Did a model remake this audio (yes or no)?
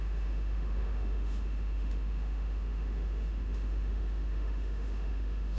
yes